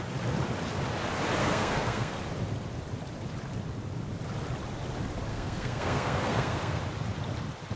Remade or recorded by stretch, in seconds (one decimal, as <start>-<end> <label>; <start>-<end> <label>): 0.0-1.4 recorded; 1.4-2.2 remade; 2.2-5.3 recorded; 5.3-6.8 remade; 6.8-7.8 recorded